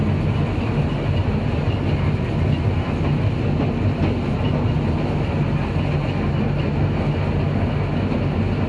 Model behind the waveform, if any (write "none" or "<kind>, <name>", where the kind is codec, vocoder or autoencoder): none